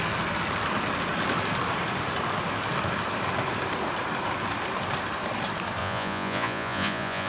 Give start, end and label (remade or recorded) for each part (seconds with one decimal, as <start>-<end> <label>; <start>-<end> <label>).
0.0-5.8 recorded; 5.8-7.3 remade

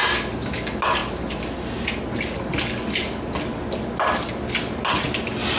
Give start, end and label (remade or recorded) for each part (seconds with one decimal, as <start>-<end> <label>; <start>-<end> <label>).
0.0-5.6 recorded

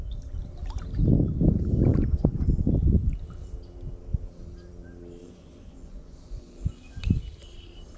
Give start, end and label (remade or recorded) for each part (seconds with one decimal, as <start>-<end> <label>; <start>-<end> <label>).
0.0-1.9 recorded; 1.9-2.5 remade; 2.5-5.2 recorded; 5.2-7.0 remade; 7.0-8.0 recorded

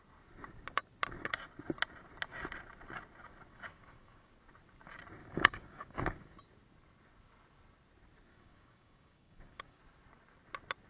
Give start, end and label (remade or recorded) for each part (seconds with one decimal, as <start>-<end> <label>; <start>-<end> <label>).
0.0-3.5 recorded; 3.5-4.3 remade; 4.3-5.2 recorded; 5.2-6.4 remade; 6.4-8.3 recorded; 8.3-9.8 remade; 9.8-10.9 recorded

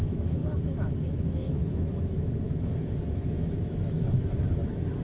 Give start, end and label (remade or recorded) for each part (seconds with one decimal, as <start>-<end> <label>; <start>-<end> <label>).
0.0-0.4 remade; 0.4-1.1 recorded; 1.1-5.0 remade

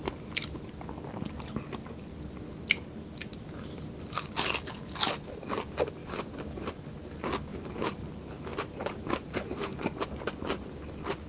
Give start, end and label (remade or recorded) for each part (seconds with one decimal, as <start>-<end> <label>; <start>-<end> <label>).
0.0-6.0 recorded; 6.0-6.6 remade; 6.6-7.5 recorded; 7.5-8.0 remade; 8.0-8.5 recorded; 8.5-10.1 remade; 10.1-11.3 recorded